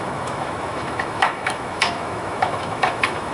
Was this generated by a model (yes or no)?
yes